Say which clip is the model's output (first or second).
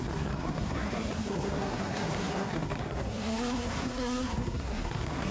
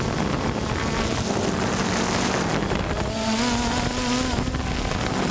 first